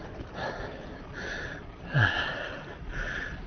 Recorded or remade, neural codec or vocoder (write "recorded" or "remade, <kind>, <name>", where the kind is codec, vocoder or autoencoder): recorded